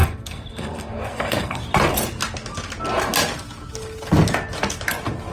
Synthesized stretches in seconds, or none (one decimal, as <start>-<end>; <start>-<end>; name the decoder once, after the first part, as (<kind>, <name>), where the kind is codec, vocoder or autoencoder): 0.0-1.6 (codec, SNAC)

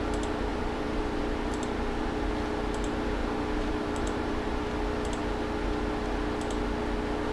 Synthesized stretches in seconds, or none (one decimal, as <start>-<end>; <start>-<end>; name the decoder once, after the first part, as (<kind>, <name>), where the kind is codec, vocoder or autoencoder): 0.5-2.3 (vocoder, BigVGAN v2); 3.2-4.6

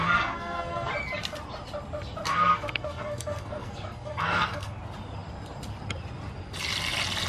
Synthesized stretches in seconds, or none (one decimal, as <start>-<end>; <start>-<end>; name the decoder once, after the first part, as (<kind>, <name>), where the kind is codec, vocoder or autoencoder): 0.0-0.9 (codec, SNAC); 2.3-4.8

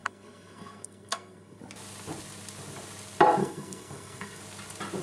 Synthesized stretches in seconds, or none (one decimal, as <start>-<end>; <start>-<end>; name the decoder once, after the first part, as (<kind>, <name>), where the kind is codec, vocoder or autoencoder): 0.0-1.6 (codec, SNAC); 3.4-4.4

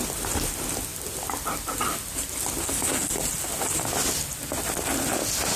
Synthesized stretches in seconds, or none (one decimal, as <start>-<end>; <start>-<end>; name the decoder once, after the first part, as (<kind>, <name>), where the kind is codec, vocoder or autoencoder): none

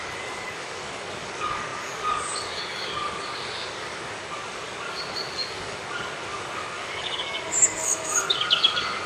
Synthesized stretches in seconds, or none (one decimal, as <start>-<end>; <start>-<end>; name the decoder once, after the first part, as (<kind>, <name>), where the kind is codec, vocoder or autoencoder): 0.0-9.1 (codec, DAC)

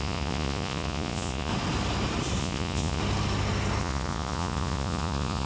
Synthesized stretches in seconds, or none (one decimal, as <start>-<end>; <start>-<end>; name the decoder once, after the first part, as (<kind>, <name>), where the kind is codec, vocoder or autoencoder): 0.0-1.5 (vocoder, Vocos); 2.4-3.0; 3.8-5.5

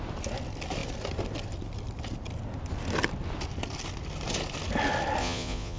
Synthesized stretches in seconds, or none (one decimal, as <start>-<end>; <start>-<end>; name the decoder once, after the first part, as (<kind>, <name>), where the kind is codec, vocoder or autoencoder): 5.2-5.8 (vocoder, Vocos)